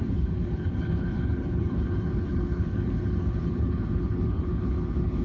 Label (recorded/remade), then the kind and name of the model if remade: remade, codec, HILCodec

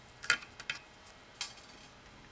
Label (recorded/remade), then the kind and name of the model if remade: recorded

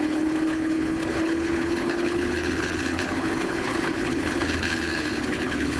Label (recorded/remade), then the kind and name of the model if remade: remade, codec, HILCodec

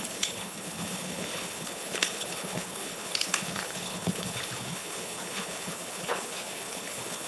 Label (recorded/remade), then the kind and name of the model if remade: remade, codec, HILCodec